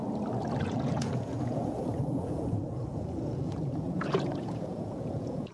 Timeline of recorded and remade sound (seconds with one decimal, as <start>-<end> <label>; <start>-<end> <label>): 0.0-0.6 recorded; 0.6-5.5 remade